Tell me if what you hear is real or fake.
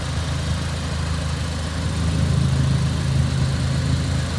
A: real